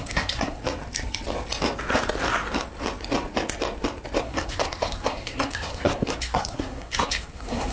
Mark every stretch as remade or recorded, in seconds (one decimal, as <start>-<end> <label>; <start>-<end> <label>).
0.0-0.6 remade; 0.6-4.2 recorded; 4.2-7.7 remade